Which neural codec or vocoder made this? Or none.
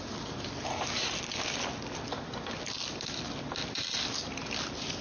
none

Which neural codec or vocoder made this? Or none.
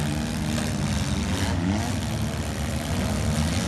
none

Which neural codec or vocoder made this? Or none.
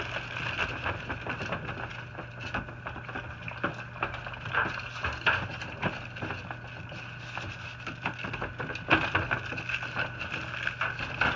none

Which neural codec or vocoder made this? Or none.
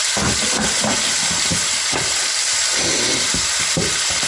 vocoder, BigVGAN v2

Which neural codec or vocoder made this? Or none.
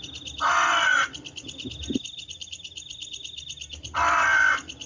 none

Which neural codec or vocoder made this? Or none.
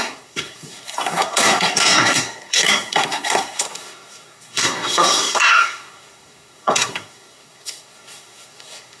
codec, SNAC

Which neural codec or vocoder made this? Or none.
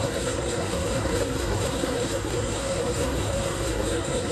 codec, SNAC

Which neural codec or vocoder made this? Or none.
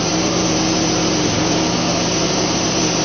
vocoder, BigVGAN v2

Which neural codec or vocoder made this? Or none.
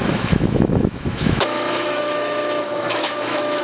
autoencoder, DAC-VAE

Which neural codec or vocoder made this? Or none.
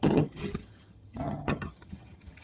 vocoder, HiFi-GAN